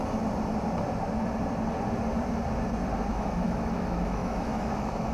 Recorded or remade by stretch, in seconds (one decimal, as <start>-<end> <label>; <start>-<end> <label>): 0.0-3.1 recorded; 3.1-5.1 remade